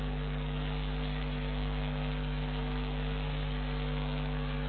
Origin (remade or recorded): remade